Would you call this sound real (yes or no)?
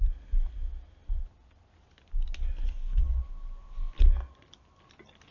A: yes